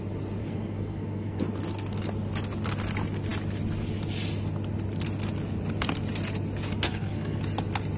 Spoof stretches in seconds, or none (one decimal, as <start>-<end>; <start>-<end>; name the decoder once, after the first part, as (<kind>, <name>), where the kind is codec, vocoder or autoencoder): 0.4-1.4 (codec, SNAC); 6.9-7.4